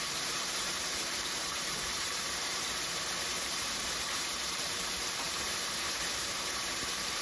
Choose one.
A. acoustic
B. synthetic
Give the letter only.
B